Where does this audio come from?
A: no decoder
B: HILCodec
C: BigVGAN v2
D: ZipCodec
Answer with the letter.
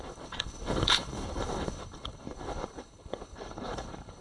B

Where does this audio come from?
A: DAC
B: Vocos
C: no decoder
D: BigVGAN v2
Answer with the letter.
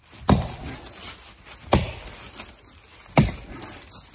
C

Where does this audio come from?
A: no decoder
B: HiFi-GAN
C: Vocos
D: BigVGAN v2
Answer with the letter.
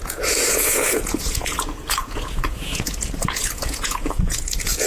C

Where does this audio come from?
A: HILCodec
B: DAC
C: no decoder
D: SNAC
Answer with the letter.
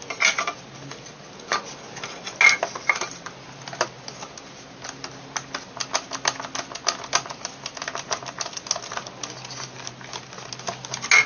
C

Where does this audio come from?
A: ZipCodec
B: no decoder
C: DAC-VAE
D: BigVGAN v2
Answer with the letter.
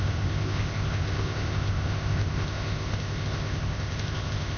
A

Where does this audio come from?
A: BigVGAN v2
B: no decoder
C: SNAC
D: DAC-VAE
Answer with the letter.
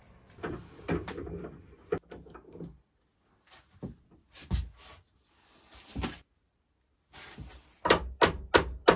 B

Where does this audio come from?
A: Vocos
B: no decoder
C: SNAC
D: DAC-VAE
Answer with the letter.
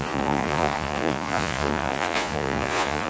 A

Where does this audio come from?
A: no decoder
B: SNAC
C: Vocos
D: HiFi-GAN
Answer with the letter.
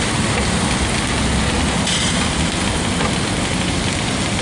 A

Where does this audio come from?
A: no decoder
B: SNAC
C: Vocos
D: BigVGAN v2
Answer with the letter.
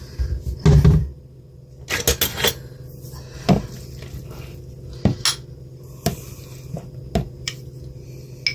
A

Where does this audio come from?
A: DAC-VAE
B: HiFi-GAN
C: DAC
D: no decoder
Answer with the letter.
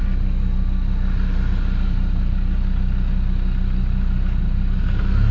D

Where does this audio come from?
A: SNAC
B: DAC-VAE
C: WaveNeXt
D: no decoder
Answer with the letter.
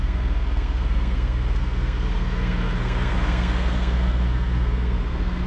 A